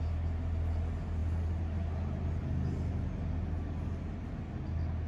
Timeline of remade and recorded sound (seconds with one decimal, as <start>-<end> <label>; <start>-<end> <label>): 0.0-5.1 recorded